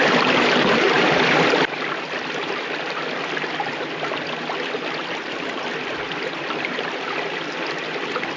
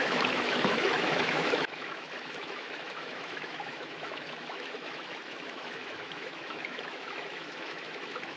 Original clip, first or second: first